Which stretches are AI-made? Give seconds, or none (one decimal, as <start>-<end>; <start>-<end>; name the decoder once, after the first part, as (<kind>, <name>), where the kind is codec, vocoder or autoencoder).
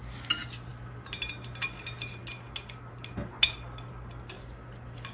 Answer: none